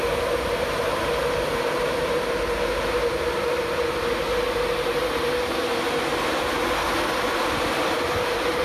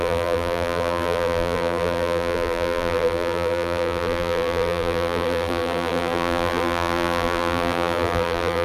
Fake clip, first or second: second